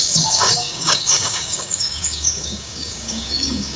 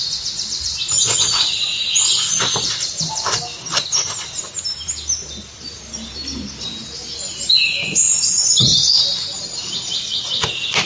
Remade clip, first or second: first